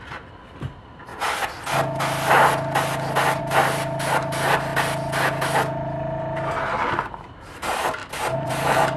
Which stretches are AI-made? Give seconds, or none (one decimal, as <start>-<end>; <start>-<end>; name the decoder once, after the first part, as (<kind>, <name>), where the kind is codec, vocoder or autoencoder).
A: 0.0-1.1 (vocoder, BigVGAN v2); 3.4-4.7; 6.9-9.0